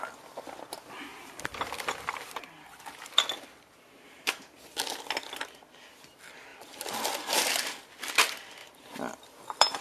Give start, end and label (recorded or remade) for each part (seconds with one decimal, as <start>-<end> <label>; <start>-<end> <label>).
0.0-1.1 recorded; 1.1-5.0 remade; 5.0-6.5 recorded; 6.5-7.2 remade; 7.2-8.6 recorded; 8.6-9.8 remade